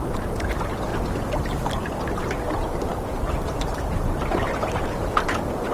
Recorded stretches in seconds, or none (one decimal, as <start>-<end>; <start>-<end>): 0.9-2.2